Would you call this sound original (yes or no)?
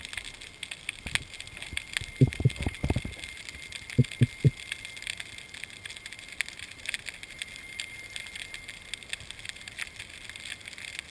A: yes